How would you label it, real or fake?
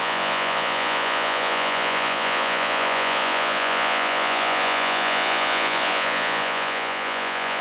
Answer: fake